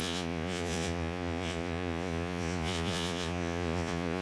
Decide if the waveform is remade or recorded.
remade